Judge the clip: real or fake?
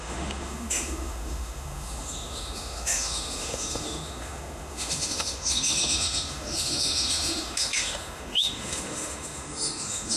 fake